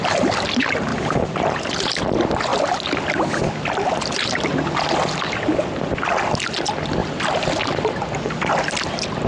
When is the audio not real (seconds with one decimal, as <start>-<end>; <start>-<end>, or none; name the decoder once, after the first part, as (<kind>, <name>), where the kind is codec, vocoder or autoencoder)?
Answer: 0.9-1.7 (vocoder, BigVGAN v2)